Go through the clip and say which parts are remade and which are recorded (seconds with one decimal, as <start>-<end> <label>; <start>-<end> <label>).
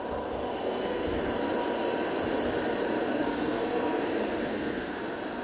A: 0.0-0.6 recorded; 0.6-1.2 remade; 1.2-3.1 recorded; 3.1-4.0 remade; 4.0-4.5 recorded; 4.5-5.0 remade; 5.0-5.4 recorded